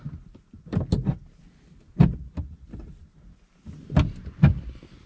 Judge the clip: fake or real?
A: real